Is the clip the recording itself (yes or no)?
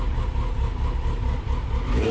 yes